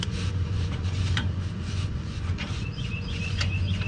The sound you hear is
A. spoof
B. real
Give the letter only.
A